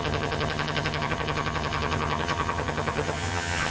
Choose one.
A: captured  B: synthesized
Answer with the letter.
B